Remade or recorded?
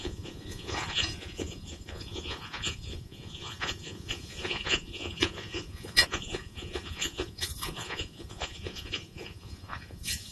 remade